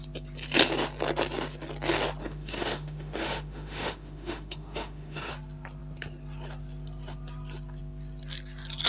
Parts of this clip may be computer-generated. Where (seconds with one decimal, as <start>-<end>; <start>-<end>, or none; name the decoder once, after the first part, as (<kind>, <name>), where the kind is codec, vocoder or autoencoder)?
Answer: 2.2-5.3 (autoencoder, DAC-VAE)